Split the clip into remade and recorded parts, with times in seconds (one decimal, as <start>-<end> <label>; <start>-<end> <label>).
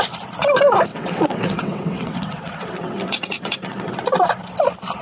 0.0-0.9 recorded; 0.9-3.9 remade; 3.9-5.0 recorded